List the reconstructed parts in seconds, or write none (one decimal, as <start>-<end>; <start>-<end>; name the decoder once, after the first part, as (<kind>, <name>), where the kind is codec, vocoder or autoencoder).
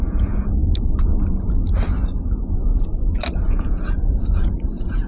0.0-0.6 (vocoder, Vocos); 2.6-3.0; 3.5-5.1